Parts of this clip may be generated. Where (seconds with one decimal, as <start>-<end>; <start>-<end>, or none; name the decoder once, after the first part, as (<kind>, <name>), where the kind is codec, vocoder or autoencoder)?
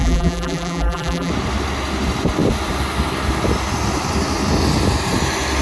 0.0-1.3 (vocoder, BigVGAN v2)